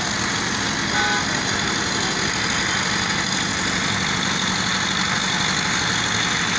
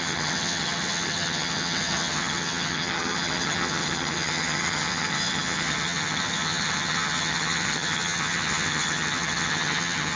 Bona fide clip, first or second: first